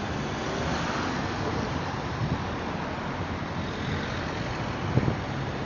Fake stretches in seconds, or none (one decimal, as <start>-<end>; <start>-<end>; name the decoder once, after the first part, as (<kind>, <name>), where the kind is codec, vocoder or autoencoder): none